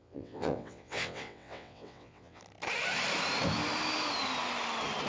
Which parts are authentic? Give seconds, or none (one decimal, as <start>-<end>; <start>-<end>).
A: 2.4-5.1